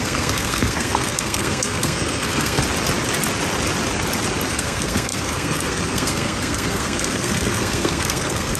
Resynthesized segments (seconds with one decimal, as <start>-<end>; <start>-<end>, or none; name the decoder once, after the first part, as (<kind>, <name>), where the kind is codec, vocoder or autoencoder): 0.0-2.6 (codec, SNAC); 4.5-8.6